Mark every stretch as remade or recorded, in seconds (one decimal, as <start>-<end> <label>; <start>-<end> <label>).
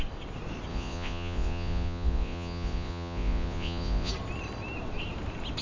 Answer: 0.0-0.7 recorded; 0.7-4.1 remade; 4.1-5.6 recorded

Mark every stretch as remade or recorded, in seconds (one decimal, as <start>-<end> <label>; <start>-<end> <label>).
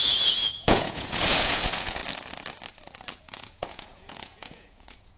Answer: 0.0-2.0 remade; 2.0-3.2 recorded; 3.2-5.2 remade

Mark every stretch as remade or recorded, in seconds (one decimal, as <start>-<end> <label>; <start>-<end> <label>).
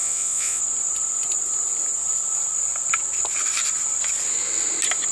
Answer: 0.0-0.6 remade; 0.6-5.1 recorded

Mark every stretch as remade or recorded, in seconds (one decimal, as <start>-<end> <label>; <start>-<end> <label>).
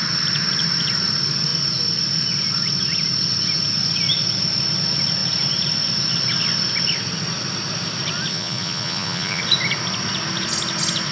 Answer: 0.0-8.3 recorded; 8.3-9.4 remade; 9.4-11.1 recorded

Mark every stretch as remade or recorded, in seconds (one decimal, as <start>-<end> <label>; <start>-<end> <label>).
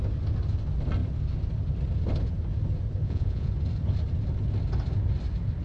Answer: 0.0-3.0 recorded; 3.0-3.5 remade; 3.5-5.6 recorded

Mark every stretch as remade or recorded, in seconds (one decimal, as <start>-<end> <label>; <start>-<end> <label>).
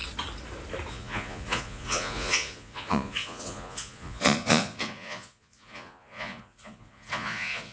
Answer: 0.0-0.9 recorded; 0.9-7.7 remade